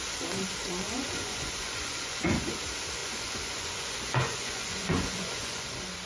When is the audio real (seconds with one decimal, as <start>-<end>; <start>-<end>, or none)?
0.0-0.6; 2.5-3.0